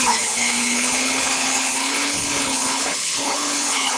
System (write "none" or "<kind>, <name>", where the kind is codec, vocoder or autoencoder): codec, HILCodec